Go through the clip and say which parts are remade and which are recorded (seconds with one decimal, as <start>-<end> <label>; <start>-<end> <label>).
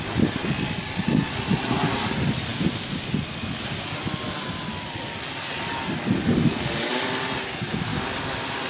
0.0-8.7 recorded